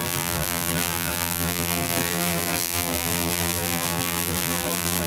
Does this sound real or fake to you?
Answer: fake